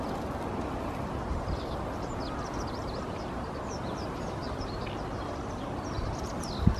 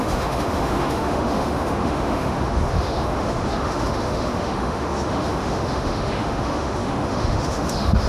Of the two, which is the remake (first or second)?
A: second